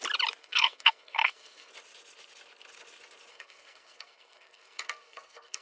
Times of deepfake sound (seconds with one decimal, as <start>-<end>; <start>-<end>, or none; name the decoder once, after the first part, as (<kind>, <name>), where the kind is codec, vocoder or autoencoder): 0.4-1.7 (codec, SNAC); 3.3-5.6